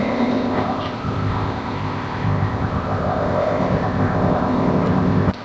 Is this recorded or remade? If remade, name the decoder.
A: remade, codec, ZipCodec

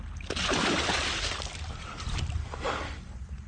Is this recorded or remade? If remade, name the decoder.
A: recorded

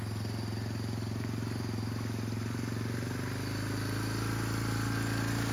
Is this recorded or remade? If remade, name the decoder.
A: recorded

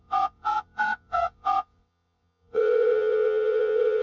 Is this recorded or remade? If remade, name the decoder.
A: remade, vocoder, WaveNeXt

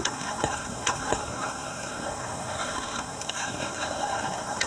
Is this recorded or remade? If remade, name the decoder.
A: remade, codec, SNAC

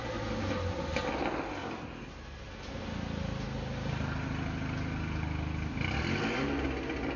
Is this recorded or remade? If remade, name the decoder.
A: recorded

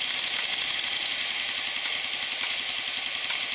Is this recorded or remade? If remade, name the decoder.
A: recorded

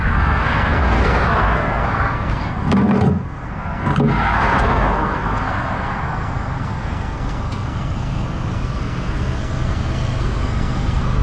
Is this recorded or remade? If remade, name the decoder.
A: remade, codec, SNAC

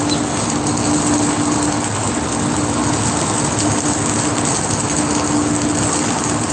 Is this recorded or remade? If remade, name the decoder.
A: recorded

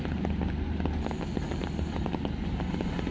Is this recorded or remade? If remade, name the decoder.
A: recorded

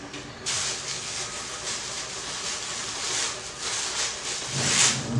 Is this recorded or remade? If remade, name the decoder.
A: recorded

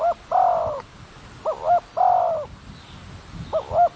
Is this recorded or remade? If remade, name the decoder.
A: recorded